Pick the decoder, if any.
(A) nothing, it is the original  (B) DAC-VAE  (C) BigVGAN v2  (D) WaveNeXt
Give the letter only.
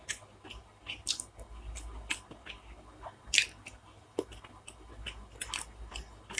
A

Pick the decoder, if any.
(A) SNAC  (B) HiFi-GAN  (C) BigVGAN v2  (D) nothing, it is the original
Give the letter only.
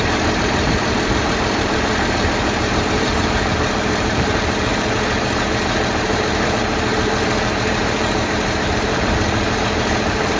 C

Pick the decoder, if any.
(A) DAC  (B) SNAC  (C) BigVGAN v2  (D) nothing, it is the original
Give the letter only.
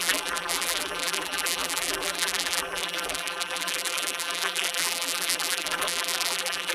C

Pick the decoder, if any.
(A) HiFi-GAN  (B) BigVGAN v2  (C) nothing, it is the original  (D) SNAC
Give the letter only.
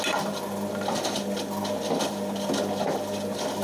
C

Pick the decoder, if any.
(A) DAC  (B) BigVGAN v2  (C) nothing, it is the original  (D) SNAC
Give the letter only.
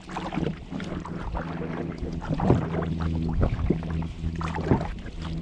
C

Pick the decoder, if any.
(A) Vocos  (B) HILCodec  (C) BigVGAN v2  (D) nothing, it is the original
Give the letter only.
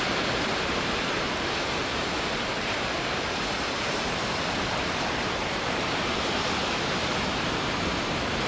C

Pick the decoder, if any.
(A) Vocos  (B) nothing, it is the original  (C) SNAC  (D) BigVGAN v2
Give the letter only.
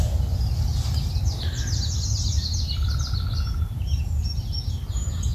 B